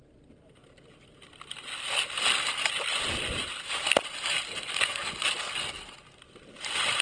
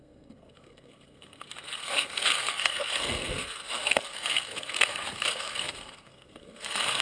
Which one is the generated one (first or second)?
second